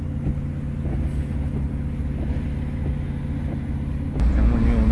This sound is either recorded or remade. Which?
recorded